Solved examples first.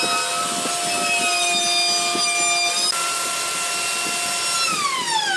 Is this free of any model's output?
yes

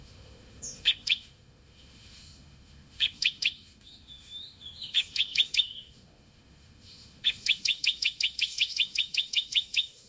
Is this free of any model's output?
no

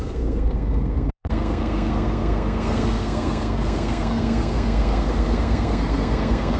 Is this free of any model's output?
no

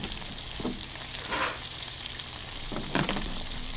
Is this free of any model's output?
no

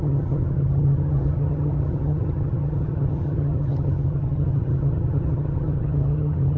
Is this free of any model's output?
no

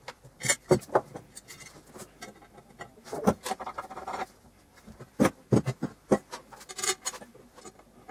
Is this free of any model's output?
yes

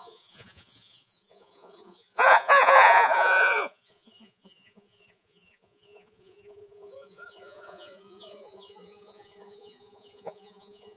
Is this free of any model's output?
no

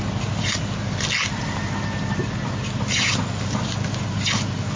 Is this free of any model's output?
yes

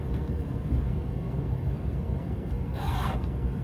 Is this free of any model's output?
no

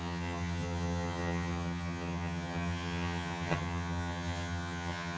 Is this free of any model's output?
no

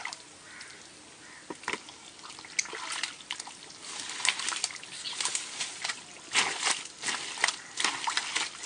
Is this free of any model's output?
yes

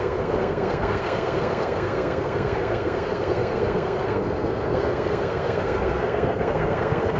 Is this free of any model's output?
no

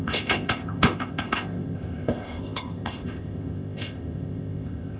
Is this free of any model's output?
no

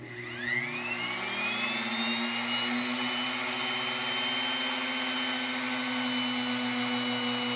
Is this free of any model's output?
yes